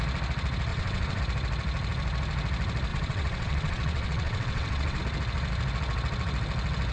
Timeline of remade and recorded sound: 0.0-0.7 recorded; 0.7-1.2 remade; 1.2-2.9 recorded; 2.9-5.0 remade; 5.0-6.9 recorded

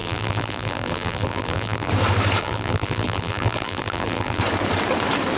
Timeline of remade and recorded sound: 0.0-1.9 remade; 1.9-2.4 recorded; 2.4-4.4 remade; 4.4-5.4 recorded

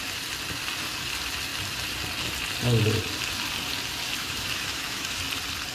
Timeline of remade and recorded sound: 0.0-4.2 recorded; 4.2-5.2 remade; 5.2-5.7 recorded

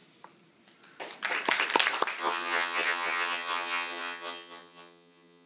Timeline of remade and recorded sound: 0.0-2.2 recorded; 2.2-5.5 remade